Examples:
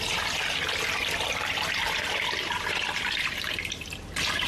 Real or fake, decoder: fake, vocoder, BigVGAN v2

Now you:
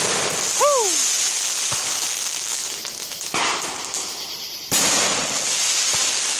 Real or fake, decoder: real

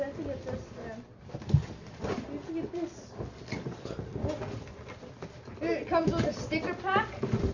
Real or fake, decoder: real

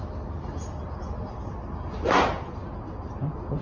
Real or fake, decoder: real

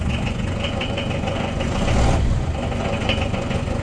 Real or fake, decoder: fake, vocoder, Vocos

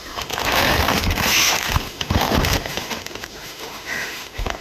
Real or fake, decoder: fake, autoencoder, DAC-VAE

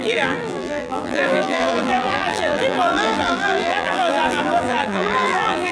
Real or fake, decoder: fake, vocoder, BigVGAN v2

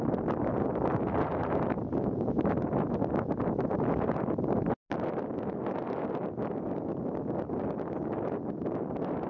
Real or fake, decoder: real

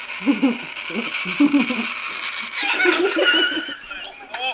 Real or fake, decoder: real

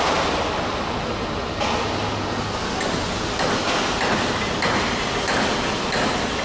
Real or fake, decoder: real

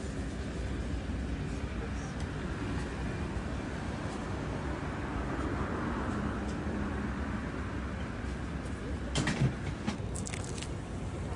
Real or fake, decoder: real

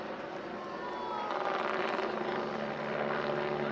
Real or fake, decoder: real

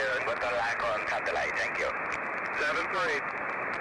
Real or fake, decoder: real